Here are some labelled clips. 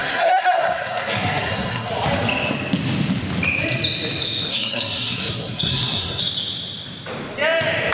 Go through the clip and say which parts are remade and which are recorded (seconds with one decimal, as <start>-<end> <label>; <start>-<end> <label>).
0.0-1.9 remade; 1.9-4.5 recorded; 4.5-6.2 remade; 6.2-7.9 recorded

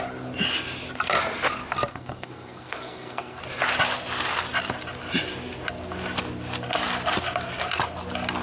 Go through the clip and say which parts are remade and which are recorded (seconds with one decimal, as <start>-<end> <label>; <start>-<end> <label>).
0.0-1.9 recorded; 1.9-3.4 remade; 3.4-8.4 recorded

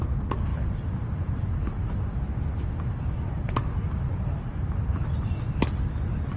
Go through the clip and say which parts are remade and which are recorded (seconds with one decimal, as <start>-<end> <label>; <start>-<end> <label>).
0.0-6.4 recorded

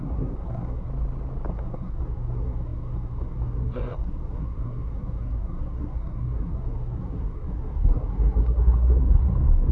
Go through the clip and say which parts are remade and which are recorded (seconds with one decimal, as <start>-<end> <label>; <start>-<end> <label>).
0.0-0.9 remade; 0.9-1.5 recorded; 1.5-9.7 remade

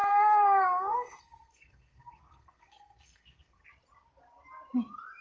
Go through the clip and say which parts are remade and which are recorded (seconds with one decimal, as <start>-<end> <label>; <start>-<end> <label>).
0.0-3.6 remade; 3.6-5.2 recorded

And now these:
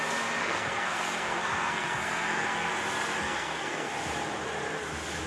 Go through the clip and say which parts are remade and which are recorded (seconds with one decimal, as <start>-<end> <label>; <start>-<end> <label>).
0.0-0.4 recorded; 0.4-2.7 remade; 2.7-3.2 recorded; 3.2-3.9 remade; 3.9-5.3 recorded

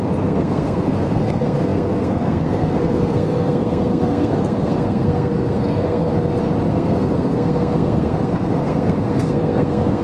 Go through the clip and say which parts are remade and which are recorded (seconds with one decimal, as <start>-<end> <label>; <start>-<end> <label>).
0.0-6.1 remade; 6.1-6.7 recorded; 6.7-10.0 remade

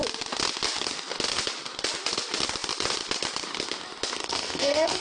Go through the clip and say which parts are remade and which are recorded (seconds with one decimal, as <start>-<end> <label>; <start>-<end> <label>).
0.0-4.2 recorded; 4.2-5.0 remade